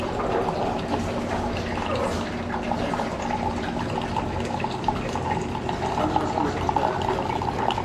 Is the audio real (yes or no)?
yes